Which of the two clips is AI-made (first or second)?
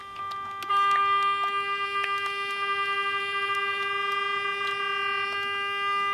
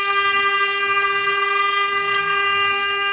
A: second